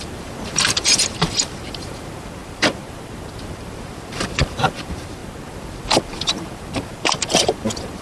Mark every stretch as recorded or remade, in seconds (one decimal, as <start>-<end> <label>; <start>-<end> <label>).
0.0-8.0 remade